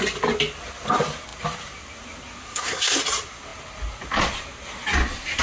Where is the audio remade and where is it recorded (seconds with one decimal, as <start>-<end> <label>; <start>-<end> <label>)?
0.0-2.4 recorded; 2.4-3.0 remade; 3.0-5.4 recorded